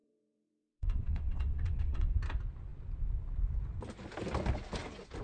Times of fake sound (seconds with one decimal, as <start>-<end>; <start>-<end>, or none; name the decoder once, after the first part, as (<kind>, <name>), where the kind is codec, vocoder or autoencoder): 0.0-2.1 (vocoder, WaveNeXt)